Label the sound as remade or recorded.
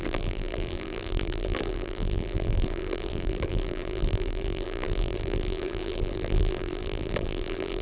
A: remade